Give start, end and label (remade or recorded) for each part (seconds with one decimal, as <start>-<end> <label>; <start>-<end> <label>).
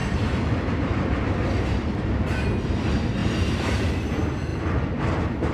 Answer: 0.0-1.4 remade; 1.4-3.2 recorded; 3.2-3.9 remade; 3.9-4.5 recorded; 4.5-5.5 remade